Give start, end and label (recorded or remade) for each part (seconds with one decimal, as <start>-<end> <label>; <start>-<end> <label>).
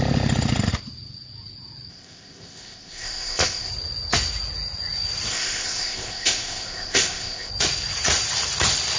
0.0-1.9 recorded; 1.9-3.7 remade; 3.7-5.3 recorded; 5.3-7.5 remade; 7.5-9.0 recorded